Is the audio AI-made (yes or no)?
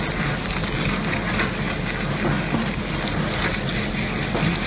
no